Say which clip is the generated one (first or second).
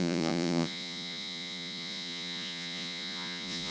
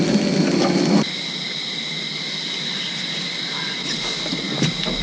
first